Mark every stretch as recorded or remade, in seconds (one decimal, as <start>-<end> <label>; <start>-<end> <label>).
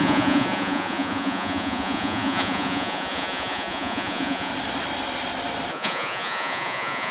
0.0-4.5 remade; 4.5-5.7 recorded; 5.7-7.1 remade